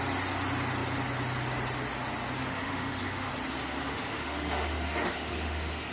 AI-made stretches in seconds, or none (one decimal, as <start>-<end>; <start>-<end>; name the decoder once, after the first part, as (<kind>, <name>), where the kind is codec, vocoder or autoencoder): 2.4-3.3 (autoencoder, DAC-VAE); 3.8-5.9